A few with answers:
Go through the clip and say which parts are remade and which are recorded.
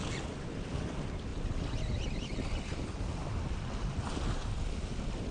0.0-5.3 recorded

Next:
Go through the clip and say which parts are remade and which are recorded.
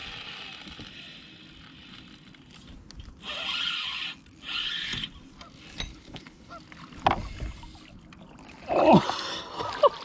0.0-5.9 recorded; 5.9-6.5 remade; 6.5-10.0 recorded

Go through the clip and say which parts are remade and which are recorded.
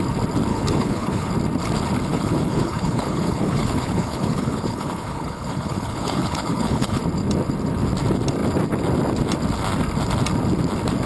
0.0-0.5 recorded; 0.5-1.3 remade; 1.3-2.1 recorded; 2.1-7.0 remade; 7.0-11.1 recorded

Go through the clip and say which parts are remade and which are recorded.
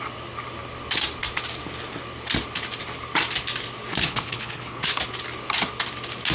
0.0-3.9 recorded; 3.9-4.8 remade; 4.8-6.3 recorded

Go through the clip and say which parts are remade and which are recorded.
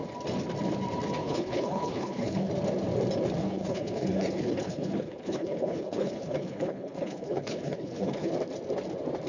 0.0-1.2 recorded; 1.2-2.5 remade; 2.5-3.4 recorded; 3.4-8.3 remade; 8.3-9.3 recorded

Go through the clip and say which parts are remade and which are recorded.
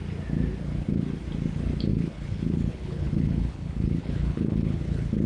0.0-1.9 recorded; 1.9-5.3 remade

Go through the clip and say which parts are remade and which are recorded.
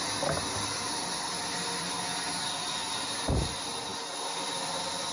0.0-5.1 recorded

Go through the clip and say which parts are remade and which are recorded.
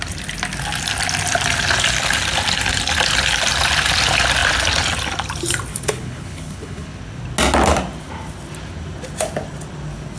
0.0-5.7 recorded; 5.7-7.0 remade; 7.0-10.2 recorded